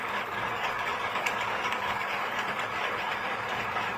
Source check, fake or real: fake